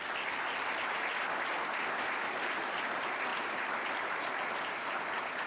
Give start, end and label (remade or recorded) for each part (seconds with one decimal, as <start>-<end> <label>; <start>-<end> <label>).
0.0-5.5 recorded